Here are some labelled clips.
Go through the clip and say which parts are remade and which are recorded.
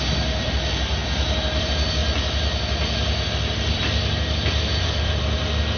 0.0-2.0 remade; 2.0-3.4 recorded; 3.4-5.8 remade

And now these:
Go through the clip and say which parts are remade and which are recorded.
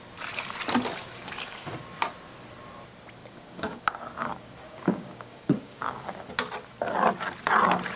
0.0-1.0 recorded; 1.0-1.7 remade; 1.7-3.2 recorded; 3.2-3.8 remade; 3.8-4.2 recorded; 4.2-6.2 remade; 6.2-8.0 recorded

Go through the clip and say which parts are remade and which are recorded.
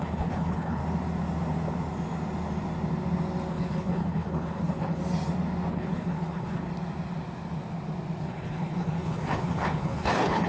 0.0-0.8 remade; 0.8-3.5 recorded; 3.5-5.0 remade; 5.0-5.7 recorded; 5.7-6.7 remade; 6.7-8.2 recorded; 8.2-10.5 remade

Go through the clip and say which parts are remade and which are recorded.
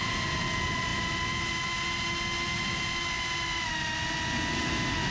0.0-5.1 recorded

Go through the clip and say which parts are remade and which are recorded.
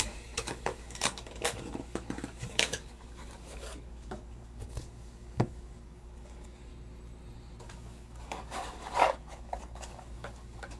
0.0-6.7 remade; 6.7-7.6 recorded; 7.6-10.8 remade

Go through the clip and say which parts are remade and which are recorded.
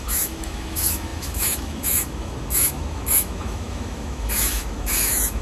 0.0-5.4 remade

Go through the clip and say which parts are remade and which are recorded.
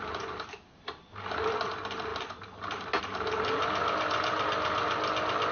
0.0-5.5 recorded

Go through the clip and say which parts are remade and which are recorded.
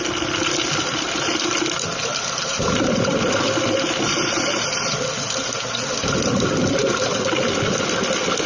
0.0-8.5 recorded